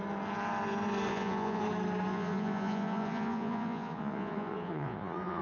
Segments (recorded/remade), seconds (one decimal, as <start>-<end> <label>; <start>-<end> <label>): 0.0-1.1 recorded; 1.1-1.6 remade; 1.6-2.1 recorded; 2.1-5.4 remade